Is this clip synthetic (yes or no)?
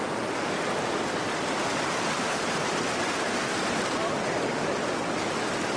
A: yes